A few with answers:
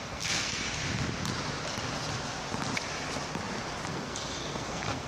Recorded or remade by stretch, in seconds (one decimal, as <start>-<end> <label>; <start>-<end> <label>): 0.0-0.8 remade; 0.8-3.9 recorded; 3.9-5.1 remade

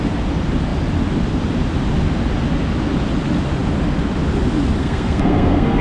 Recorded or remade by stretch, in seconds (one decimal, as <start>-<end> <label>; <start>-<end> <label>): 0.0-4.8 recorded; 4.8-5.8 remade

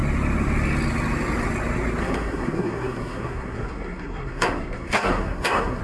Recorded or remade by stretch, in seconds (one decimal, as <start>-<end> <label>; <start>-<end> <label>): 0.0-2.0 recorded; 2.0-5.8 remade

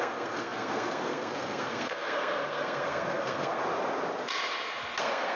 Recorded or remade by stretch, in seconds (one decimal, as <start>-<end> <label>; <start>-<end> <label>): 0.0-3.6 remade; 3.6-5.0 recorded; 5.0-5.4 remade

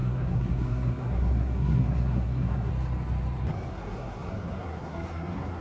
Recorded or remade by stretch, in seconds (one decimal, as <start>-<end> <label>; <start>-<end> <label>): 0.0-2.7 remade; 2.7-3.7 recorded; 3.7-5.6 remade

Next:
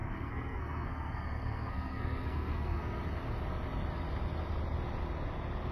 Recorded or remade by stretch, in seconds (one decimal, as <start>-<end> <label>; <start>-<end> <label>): 0.0-3.0 remade; 3.0-5.7 recorded

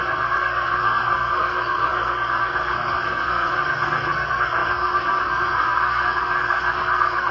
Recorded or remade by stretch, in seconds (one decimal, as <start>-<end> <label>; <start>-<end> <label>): 0.0-7.3 remade

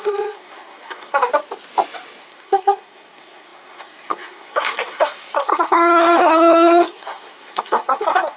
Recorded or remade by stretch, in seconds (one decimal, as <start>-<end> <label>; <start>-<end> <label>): 0.0-1.3 remade; 1.3-2.2 recorded; 2.2-8.4 remade